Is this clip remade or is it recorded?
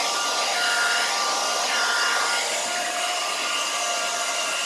recorded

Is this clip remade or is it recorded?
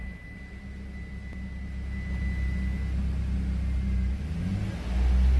recorded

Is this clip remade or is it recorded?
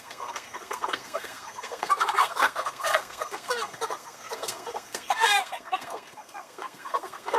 remade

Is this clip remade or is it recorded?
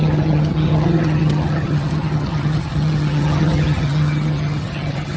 remade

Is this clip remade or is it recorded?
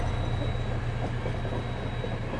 recorded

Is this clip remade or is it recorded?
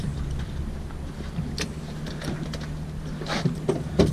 recorded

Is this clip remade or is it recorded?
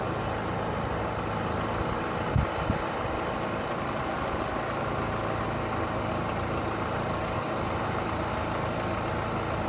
recorded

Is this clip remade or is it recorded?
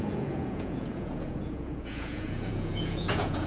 remade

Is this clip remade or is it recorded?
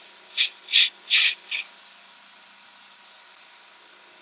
recorded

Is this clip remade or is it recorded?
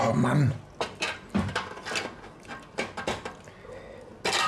recorded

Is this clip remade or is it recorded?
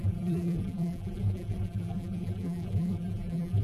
remade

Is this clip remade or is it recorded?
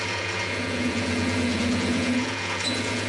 remade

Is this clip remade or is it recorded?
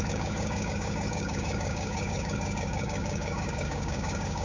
remade